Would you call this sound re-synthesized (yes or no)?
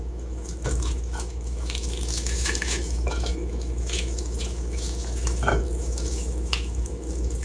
yes